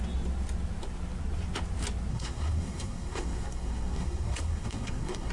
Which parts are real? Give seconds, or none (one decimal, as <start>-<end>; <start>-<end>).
0.0-2.1

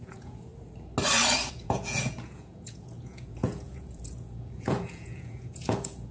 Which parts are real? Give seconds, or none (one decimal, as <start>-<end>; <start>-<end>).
0.5-1.5

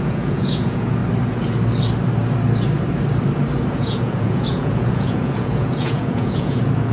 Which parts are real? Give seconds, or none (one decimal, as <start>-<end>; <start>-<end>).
1.0-3.7

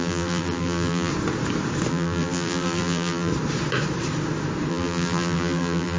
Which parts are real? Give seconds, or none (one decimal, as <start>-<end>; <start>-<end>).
1.1-1.9; 3.3-4.7

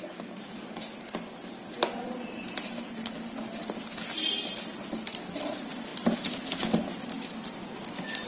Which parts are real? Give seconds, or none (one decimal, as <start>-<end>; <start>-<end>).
0.0-8.3

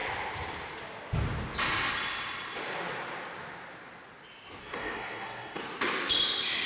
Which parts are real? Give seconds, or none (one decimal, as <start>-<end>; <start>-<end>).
0.0-4.6; 5.6-6.7